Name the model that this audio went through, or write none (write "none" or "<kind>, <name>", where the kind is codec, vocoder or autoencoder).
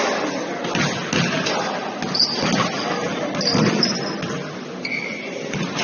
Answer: none